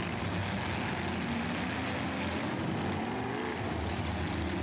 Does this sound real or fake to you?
real